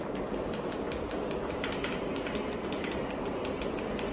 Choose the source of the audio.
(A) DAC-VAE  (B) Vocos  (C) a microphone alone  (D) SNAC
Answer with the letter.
C